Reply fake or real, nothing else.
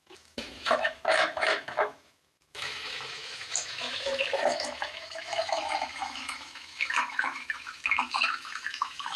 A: fake